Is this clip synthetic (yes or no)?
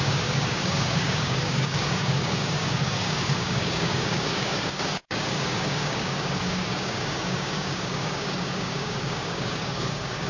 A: yes